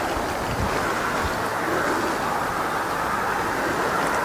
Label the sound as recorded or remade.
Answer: recorded